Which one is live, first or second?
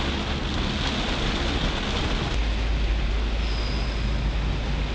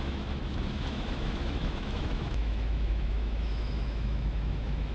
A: first